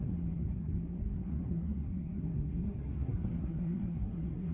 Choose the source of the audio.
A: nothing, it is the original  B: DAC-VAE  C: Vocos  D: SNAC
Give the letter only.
D